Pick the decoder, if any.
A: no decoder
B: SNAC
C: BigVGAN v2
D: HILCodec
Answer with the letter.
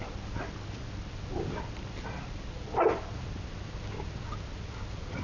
A